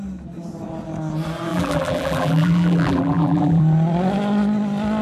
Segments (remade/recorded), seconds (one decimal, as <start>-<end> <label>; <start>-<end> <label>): 0.0-1.5 recorded; 1.5-3.6 remade; 3.6-5.0 recorded